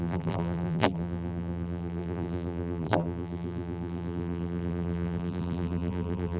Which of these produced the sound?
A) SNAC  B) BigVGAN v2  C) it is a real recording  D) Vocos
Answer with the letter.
B